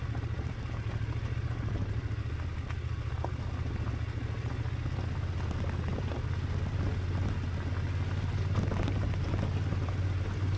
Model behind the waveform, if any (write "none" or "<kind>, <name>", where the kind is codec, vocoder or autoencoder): none